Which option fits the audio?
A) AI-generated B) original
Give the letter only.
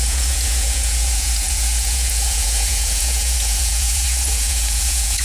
A